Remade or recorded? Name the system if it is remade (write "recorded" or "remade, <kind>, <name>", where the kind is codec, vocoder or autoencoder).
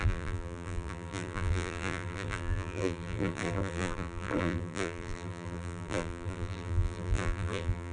remade, vocoder, BigVGAN v2